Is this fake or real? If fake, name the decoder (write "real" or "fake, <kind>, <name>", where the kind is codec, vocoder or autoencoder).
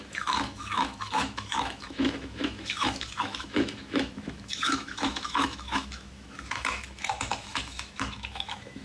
fake, autoencoder, DAC-VAE